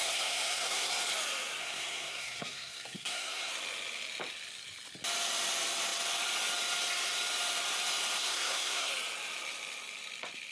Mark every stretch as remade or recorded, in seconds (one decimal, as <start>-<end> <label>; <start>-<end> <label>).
0.0-0.9 remade; 0.9-1.6 recorded; 1.6-3.5 remade; 3.5-8.2 recorded; 8.2-8.9 remade; 8.9-10.5 recorded